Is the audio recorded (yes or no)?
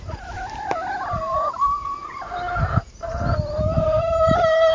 yes